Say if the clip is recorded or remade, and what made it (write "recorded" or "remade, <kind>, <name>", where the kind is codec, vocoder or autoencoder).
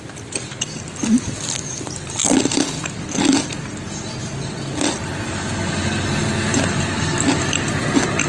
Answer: recorded